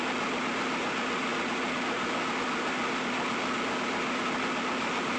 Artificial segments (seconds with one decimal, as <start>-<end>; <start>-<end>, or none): none